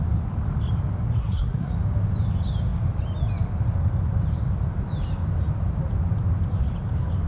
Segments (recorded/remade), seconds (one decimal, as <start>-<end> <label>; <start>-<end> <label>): 0.0-1.2 recorded; 1.2-1.7 remade; 1.7-7.3 recorded